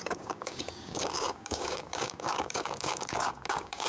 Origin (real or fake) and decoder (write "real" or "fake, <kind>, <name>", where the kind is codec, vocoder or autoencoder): fake, codec, DAC